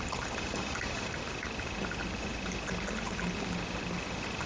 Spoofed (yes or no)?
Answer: no